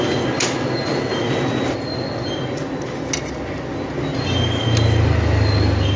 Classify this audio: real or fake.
real